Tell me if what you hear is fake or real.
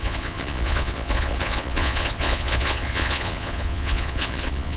fake